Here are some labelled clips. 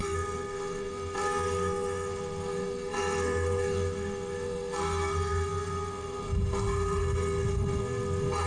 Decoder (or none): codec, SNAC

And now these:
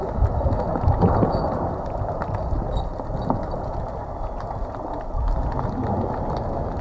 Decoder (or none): none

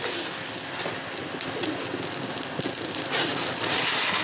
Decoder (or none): none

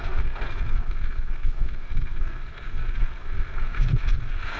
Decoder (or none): codec, SNAC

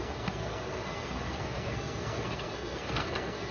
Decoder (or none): codec, SNAC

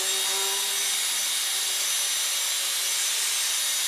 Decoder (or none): none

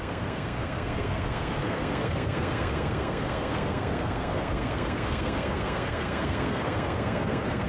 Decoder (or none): codec, SNAC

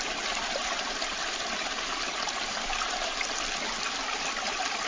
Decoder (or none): none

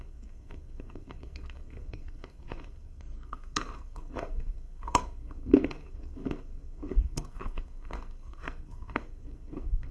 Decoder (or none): codec, SNAC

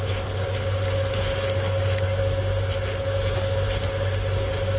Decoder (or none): none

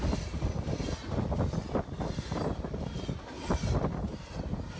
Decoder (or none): none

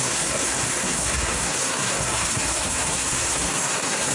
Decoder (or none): codec, SNAC